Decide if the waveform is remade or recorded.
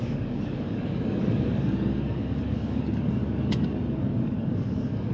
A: remade